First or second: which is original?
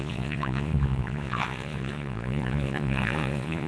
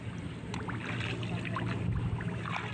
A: second